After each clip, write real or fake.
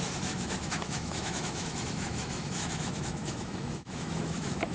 fake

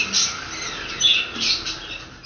real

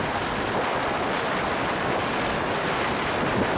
fake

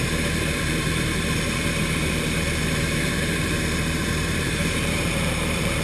fake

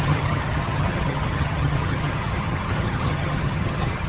fake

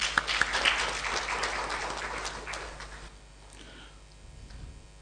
real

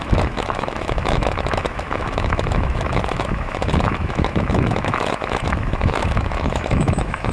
fake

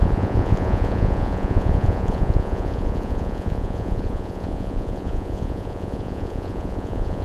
fake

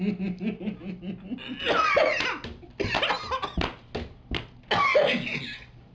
real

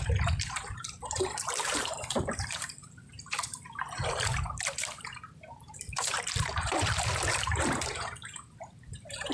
fake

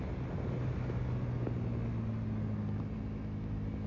real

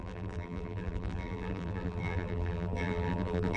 fake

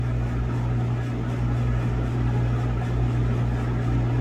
real